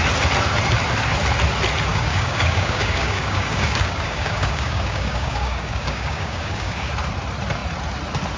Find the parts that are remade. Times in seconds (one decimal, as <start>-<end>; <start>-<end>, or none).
1.9-6.9